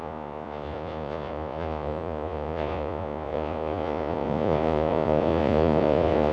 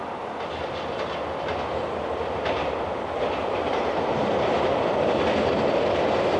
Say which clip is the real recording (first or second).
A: second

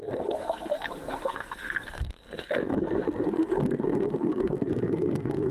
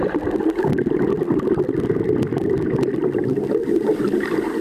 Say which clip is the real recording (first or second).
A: second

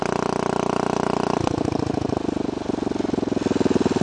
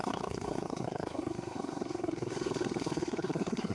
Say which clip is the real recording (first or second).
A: first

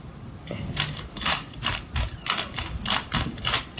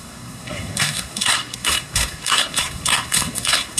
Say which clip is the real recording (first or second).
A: first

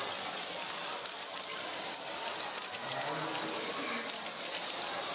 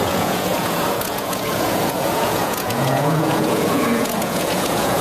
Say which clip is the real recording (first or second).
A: first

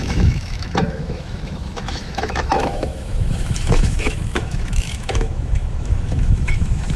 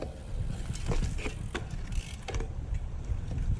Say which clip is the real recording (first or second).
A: second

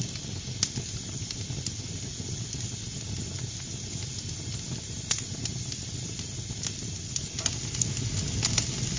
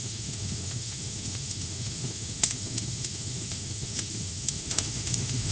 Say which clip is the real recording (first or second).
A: first